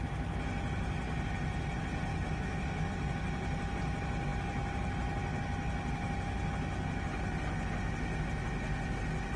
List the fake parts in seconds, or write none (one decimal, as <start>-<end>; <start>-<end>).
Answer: 2.1-2.9